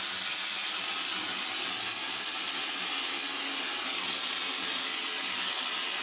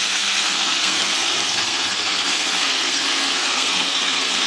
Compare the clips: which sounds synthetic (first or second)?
second